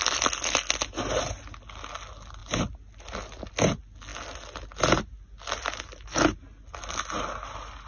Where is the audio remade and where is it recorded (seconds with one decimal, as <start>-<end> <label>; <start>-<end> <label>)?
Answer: 0.0-7.9 recorded